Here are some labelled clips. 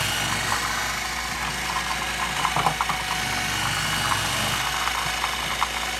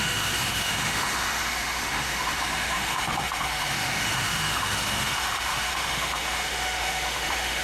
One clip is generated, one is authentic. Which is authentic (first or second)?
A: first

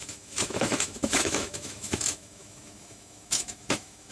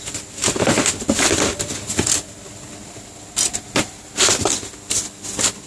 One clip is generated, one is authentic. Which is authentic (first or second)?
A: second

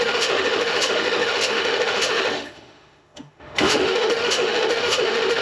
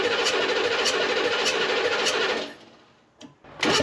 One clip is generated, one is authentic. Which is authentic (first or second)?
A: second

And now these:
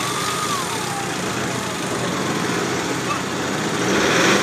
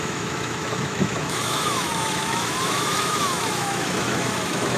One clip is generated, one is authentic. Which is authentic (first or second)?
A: first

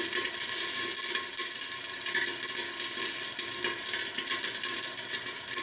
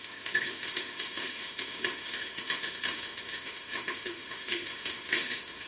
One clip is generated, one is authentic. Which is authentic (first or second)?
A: first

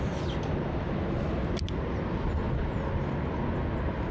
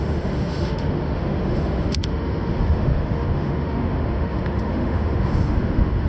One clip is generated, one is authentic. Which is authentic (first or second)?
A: first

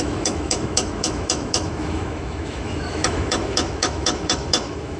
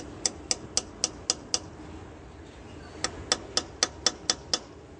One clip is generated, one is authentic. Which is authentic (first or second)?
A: second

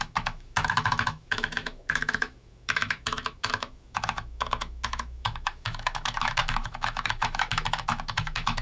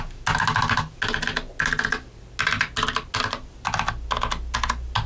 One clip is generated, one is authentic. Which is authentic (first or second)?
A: second